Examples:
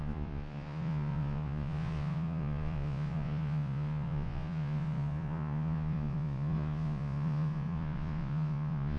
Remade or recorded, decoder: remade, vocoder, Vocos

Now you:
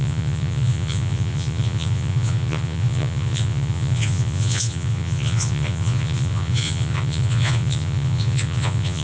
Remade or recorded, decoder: remade, vocoder, Vocos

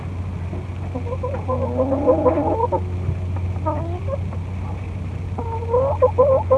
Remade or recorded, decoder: recorded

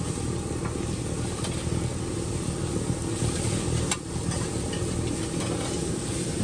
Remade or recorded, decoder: recorded